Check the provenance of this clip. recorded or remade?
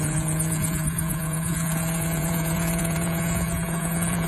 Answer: remade